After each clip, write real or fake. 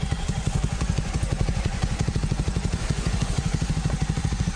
fake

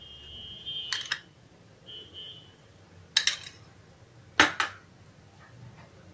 real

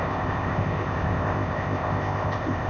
fake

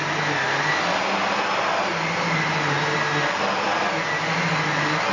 real